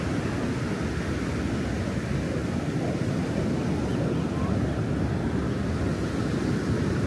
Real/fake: real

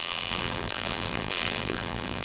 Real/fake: fake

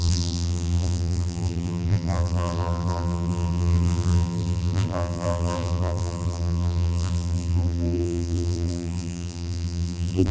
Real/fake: fake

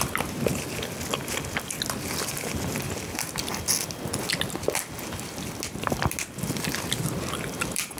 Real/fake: real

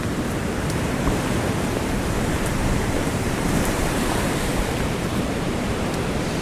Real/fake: fake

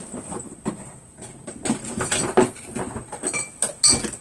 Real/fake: real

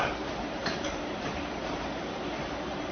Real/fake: fake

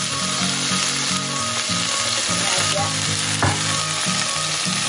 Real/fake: real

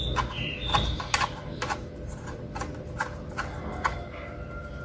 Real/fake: real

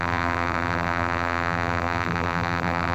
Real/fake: fake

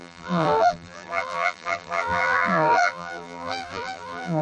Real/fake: fake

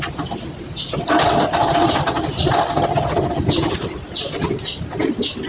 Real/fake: real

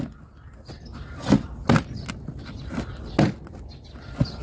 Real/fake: real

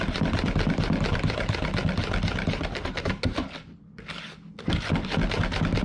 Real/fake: real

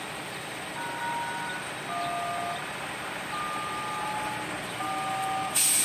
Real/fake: real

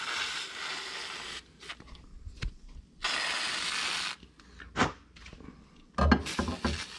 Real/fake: real